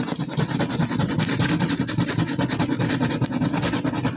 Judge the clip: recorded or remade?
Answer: recorded